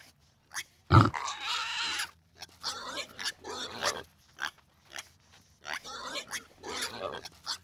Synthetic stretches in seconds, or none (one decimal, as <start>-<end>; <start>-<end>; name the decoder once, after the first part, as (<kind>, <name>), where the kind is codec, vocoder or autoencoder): none